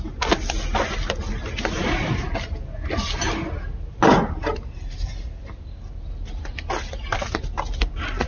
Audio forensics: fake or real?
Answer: real